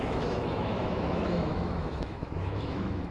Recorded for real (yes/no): no